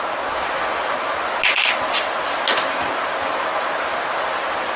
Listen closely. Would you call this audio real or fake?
real